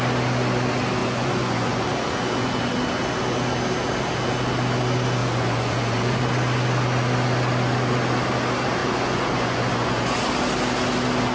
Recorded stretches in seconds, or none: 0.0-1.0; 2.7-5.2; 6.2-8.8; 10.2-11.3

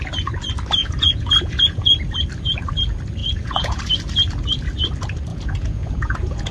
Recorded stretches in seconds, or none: 0.0-0.8; 2.0-3.2; 3.8-5.3

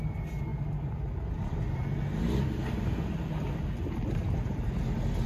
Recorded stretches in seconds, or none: 0.0-5.3